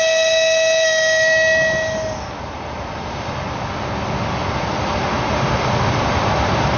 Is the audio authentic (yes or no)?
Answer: yes